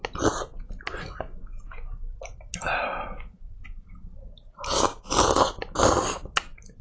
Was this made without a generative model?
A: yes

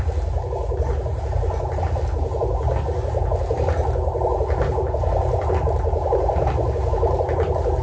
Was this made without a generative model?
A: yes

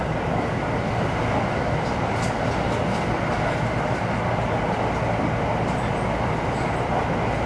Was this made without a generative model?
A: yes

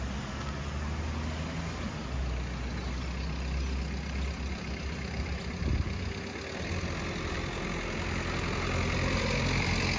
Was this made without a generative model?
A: yes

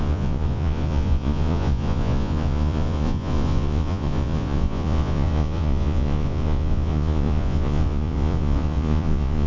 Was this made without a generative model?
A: no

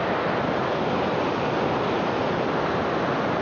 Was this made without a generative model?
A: yes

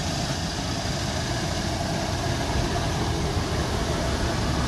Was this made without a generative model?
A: yes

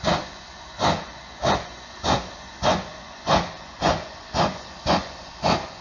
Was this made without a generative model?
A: no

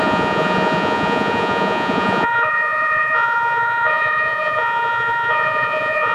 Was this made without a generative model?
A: no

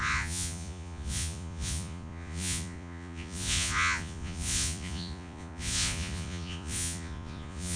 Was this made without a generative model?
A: no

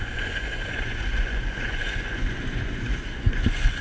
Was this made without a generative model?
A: no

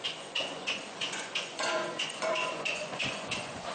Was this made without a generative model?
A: no